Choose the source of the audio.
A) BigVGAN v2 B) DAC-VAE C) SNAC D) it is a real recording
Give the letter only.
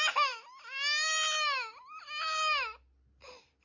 D